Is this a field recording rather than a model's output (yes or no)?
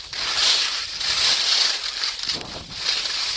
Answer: yes